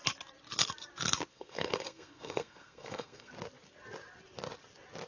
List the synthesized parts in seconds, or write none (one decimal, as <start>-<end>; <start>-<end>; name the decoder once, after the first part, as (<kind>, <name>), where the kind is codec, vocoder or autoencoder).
1.3-3.3 (codec, SNAC)